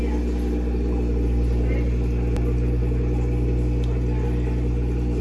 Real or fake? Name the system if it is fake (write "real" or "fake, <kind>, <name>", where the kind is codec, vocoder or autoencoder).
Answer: real